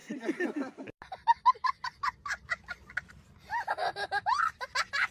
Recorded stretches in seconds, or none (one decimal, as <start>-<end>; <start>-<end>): 0.0-5.1